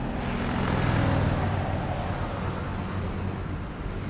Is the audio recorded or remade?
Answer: recorded